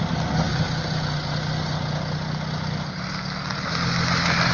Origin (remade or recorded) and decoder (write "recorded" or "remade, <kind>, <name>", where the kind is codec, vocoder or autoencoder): recorded